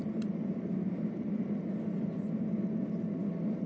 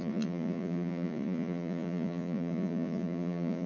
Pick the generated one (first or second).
second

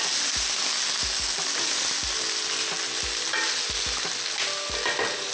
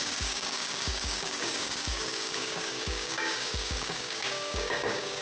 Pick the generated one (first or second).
second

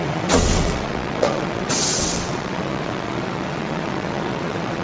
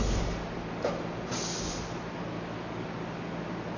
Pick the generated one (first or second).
first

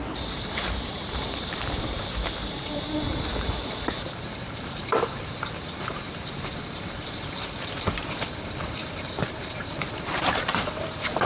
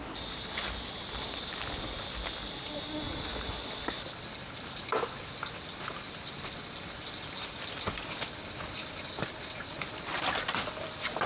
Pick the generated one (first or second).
first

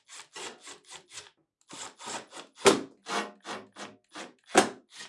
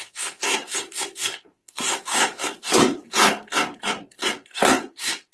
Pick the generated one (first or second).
second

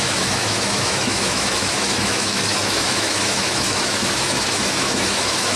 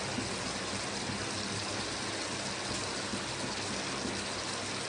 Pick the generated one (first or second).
first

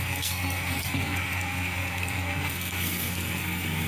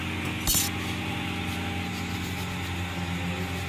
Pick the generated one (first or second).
first